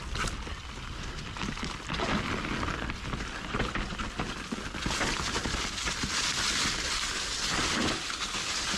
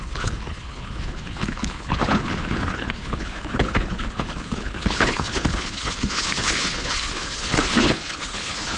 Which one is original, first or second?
first